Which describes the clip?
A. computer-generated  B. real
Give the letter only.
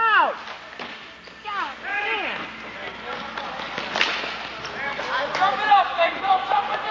B